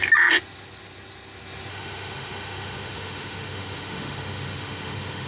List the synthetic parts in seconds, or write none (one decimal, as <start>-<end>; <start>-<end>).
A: 1.7-5.3

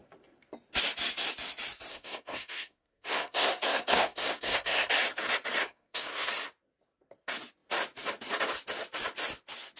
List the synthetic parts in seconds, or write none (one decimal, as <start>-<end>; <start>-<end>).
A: 1.9-4.9; 5.6-6.3